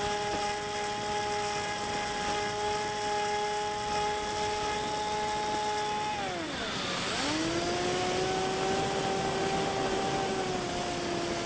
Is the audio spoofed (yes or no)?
no